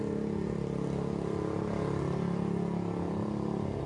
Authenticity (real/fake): real